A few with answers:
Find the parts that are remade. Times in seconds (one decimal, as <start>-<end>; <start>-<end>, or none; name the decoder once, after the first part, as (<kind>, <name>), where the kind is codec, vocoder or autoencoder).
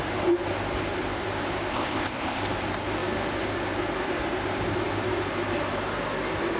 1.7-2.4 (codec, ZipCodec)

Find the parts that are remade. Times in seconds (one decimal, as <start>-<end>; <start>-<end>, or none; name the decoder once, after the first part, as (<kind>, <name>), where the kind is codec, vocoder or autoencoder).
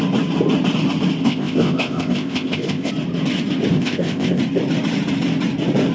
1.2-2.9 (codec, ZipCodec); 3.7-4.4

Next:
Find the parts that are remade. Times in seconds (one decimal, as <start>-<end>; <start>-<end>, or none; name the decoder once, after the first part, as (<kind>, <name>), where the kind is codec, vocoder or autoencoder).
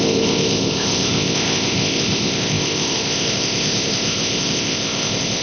0.0-5.4 (codec, ZipCodec)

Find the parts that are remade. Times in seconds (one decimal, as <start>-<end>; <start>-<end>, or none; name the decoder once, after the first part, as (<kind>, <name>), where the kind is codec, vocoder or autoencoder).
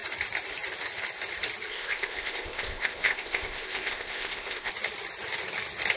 1.7-4.7 (codec, ZipCodec)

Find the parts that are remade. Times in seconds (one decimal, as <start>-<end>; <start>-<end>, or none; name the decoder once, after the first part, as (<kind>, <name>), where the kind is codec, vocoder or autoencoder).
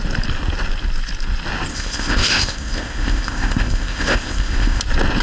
1.7-4.8 (codec, ZipCodec)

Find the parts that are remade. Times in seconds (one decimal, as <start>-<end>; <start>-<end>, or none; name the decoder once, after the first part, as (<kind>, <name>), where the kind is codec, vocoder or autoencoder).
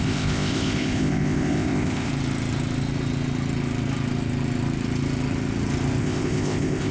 0.0-2.1 (codec, ZipCodec); 6.0-6.9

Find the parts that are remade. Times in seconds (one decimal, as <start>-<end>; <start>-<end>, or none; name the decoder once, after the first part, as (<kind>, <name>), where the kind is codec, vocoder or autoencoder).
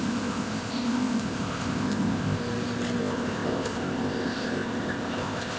0.0-2.4 (codec, ZipCodec); 3.0-5.6